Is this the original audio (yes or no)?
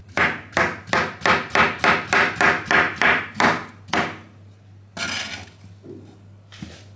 yes